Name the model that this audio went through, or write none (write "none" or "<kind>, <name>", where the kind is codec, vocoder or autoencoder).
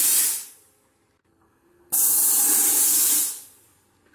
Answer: none